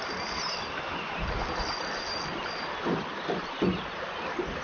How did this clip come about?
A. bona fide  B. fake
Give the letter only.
A